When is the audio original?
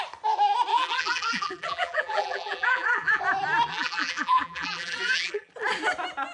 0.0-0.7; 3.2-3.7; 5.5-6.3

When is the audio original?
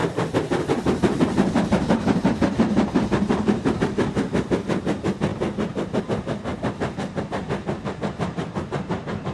3.8-9.3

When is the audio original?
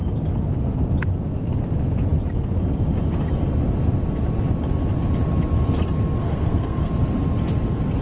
0.0-6.2; 6.9-8.0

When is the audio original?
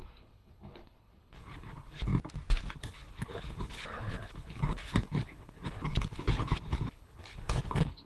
2.1-2.7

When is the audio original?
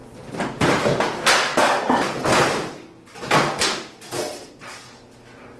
0.0-5.6